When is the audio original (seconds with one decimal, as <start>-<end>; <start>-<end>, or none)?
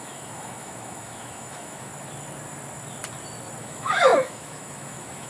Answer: 1.9-3.6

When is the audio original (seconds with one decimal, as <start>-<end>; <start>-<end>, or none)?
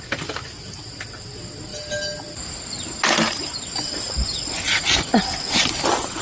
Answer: 0.0-6.2